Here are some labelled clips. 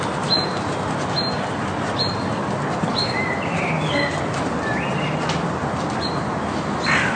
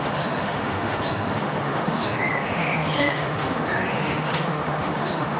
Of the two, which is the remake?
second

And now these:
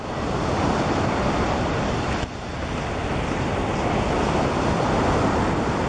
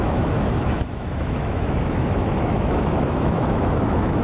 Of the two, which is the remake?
second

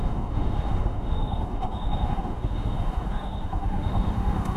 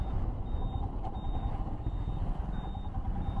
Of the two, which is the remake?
first